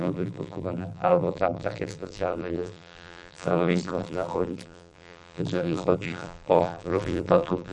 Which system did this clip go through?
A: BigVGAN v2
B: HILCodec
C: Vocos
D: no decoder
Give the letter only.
A